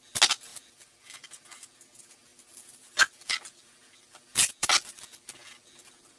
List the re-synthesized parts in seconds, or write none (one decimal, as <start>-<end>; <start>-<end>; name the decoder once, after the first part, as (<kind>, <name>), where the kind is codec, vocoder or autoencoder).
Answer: 0.5-1.3 (vocoder, BigVGAN v2); 2.3-5.7